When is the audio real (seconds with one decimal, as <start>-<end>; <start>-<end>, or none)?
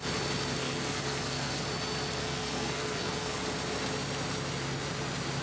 0.0-0.6; 1.6-2.2; 3.4-5.4